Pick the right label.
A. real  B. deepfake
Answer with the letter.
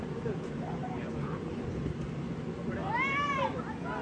A